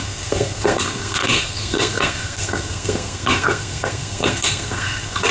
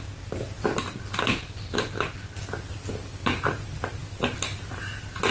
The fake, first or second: first